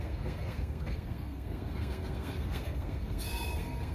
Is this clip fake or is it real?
fake